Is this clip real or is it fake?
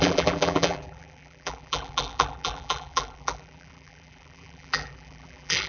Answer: fake